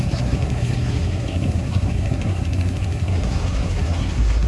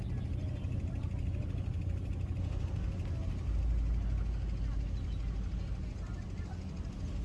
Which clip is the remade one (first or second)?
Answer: first